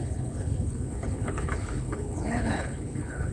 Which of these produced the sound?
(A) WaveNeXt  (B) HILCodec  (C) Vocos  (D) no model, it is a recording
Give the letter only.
B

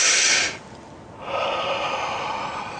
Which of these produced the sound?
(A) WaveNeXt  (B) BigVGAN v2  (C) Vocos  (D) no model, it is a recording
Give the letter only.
D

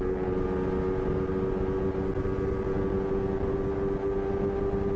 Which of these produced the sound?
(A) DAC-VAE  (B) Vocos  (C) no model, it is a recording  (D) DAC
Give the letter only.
C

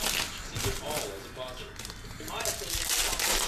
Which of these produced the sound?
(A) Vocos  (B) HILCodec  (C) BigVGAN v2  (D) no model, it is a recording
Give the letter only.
D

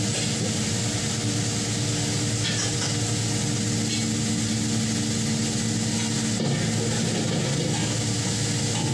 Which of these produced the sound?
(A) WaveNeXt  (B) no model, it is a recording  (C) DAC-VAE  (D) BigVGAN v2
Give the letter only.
B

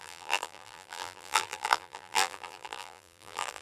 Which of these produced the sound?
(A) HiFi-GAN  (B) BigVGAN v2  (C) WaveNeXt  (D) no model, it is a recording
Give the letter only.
B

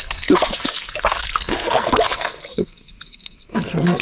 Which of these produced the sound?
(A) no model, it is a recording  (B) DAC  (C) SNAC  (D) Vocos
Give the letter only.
C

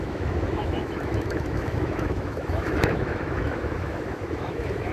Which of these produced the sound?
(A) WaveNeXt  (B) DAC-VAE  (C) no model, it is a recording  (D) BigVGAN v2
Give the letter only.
B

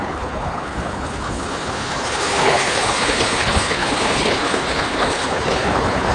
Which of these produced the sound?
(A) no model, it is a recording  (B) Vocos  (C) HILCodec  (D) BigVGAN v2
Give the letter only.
C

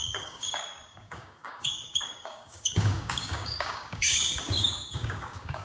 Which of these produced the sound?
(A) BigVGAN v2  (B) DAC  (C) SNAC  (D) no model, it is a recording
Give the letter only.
B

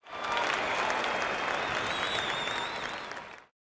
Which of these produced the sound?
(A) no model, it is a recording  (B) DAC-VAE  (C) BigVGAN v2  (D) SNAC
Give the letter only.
A